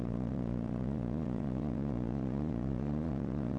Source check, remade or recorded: remade